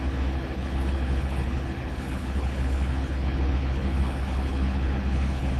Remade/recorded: remade